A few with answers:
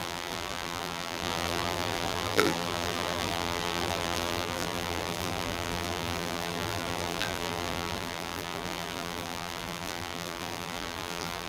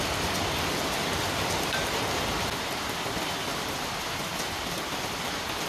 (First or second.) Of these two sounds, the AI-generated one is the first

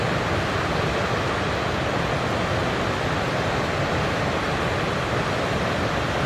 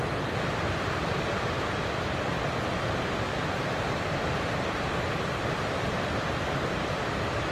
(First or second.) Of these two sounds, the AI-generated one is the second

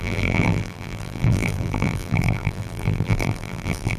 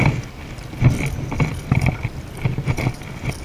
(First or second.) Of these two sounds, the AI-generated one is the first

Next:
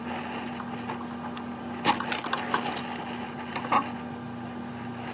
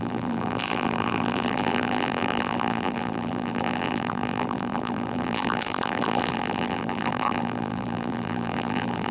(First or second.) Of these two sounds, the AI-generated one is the second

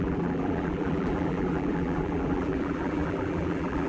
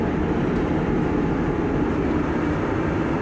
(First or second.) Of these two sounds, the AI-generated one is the first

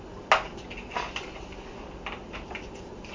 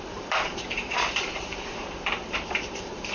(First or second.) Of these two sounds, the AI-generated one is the second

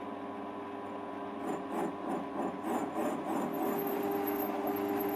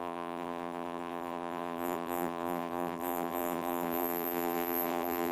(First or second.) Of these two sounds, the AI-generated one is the second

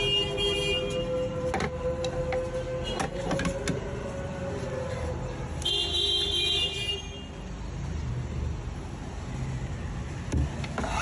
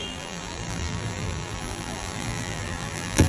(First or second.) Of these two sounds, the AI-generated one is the second